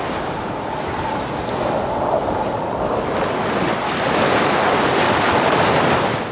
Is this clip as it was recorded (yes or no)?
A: yes